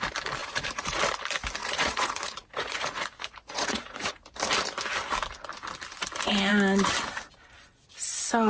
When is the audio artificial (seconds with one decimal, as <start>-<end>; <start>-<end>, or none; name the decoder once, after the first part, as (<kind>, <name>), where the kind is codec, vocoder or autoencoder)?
0.4-1.0 (vocoder, Vocos); 1.6-4.1